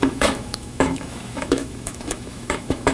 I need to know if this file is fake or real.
fake